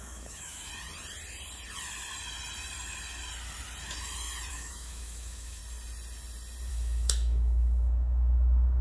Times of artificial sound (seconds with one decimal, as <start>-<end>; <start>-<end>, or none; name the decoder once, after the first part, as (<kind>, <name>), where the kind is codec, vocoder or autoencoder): 0.0-0.7 (autoencoder, DAC-VAE); 4.5-5.6; 6.7-8.8